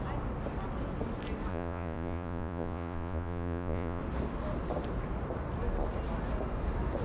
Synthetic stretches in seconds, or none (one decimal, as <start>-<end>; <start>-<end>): 1.5-4.0